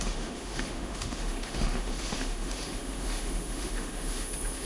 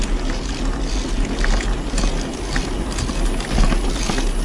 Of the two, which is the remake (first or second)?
first